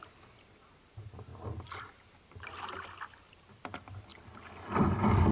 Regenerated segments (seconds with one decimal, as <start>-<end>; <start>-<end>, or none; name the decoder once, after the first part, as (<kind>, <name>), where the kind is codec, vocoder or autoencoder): none

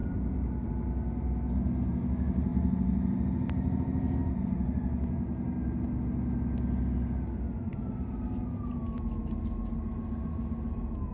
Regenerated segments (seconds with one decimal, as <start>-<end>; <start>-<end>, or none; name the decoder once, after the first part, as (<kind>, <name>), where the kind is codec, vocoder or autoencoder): 0.0-0.7 (vocoder, BigVGAN v2)

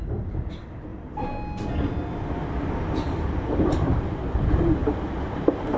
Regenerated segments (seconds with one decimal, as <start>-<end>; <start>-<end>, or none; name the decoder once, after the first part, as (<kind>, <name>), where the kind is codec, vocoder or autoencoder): 0.0-0.9 (vocoder, BigVGAN v2); 2.9-5.8

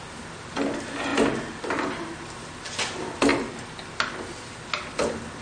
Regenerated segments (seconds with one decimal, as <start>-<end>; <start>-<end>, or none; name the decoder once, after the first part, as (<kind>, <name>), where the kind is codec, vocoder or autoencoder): none

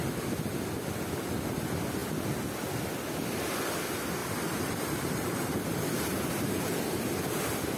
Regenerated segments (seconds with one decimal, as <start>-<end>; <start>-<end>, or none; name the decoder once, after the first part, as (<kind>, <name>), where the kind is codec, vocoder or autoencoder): 4.2-7.0 (vocoder, BigVGAN v2)